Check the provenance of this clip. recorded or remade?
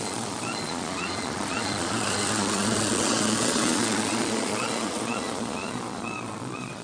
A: remade